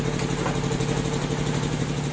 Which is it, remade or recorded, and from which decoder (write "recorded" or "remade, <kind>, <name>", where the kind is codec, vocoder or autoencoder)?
recorded